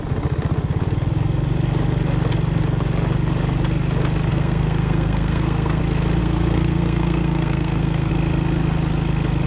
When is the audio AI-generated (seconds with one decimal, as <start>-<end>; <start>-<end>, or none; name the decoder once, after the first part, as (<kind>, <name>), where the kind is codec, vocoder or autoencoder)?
4.3-5.8 (codec, SNAC); 6.2-8.1